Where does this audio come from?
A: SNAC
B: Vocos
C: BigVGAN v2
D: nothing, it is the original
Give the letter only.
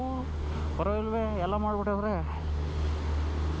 D